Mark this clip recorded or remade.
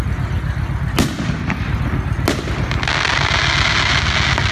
recorded